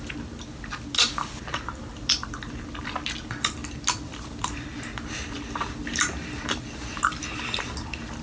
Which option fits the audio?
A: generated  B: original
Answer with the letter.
B